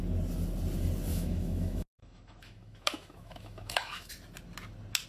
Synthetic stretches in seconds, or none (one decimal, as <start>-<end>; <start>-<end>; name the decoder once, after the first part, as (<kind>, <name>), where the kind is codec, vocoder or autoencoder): 1.1-4.1 (autoencoder, DAC-VAE)